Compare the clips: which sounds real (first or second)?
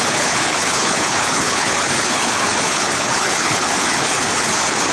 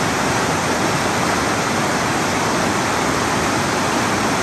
second